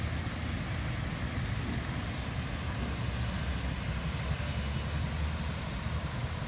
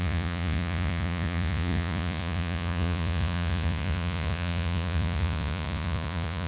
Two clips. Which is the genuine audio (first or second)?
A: first